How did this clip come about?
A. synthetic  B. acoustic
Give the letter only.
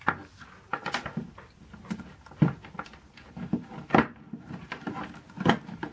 B